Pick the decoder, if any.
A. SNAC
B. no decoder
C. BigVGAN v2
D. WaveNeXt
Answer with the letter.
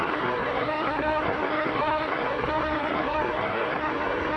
A